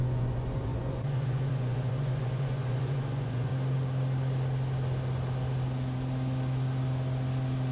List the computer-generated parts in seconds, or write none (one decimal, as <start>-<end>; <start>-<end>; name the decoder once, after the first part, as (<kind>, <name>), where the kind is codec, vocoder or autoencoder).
0.0-3.5 (vocoder, Vocos)